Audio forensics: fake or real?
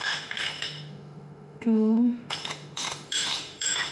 fake